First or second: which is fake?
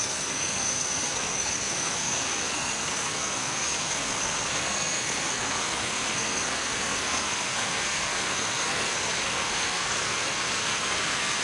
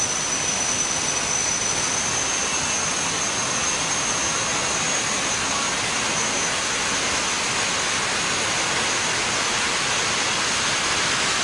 first